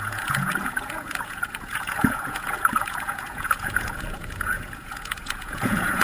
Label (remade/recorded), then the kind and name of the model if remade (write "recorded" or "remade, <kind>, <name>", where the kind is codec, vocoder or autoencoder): remade, vocoder, Vocos